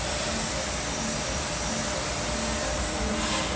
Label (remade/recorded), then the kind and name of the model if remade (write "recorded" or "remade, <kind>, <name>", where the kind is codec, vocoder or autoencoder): recorded